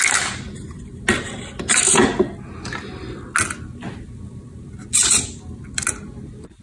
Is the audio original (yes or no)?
yes